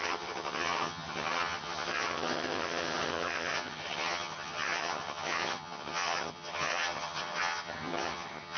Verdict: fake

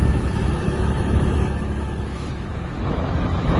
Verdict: fake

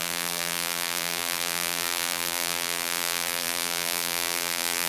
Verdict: fake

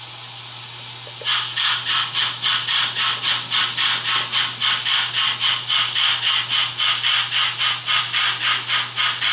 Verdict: real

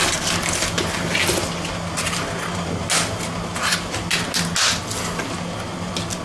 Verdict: real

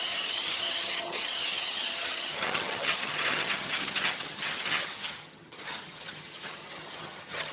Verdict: fake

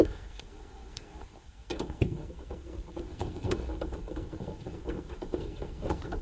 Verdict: fake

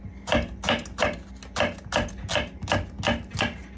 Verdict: real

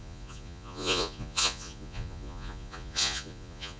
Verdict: fake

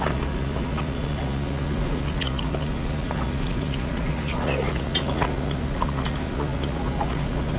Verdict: fake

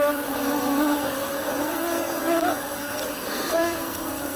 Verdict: fake